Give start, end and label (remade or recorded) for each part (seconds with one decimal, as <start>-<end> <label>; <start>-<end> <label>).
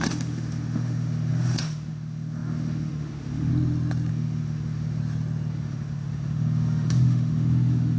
0.0-3.5 remade; 3.5-4.1 recorded; 4.1-5.0 remade; 5.0-5.5 recorded; 5.5-8.0 remade